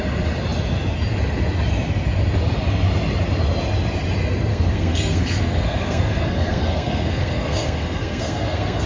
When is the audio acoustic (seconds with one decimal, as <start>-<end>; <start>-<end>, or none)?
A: 0.0-4.5